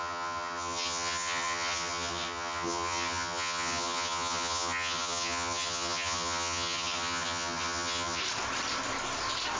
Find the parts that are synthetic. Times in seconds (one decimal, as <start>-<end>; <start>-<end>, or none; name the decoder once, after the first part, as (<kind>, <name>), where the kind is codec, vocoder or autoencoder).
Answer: 0.0-8.2 (vocoder, HiFi-GAN)